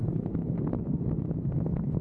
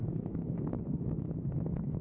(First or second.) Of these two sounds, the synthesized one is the second